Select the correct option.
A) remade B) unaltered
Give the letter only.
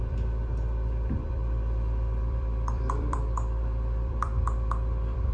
A